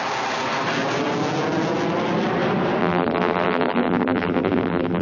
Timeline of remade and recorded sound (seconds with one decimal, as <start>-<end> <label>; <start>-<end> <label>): 0.0-2.8 recorded; 2.8-5.0 remade